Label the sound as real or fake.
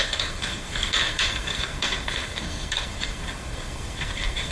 fake